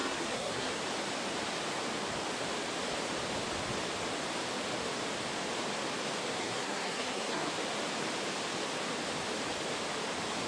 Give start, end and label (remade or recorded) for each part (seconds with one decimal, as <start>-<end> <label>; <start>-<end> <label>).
0.0-0.7 remade; 0.7-6.4 recorded; 6.4-7.5 remade; 7.5-10.5 recorded